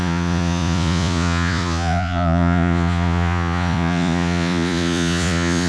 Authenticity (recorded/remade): remade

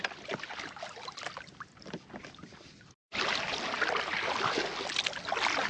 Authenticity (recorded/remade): recorded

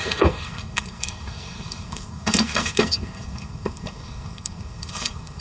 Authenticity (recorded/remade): remade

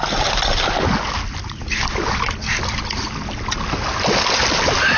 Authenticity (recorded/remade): recorded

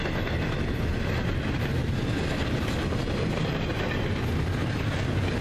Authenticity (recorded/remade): recorded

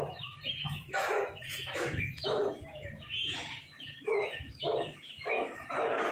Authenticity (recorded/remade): remade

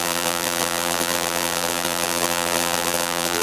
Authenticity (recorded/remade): remade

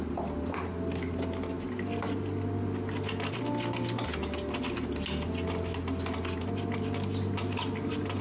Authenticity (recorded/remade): recorded